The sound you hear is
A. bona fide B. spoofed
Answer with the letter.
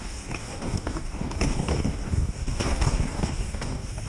B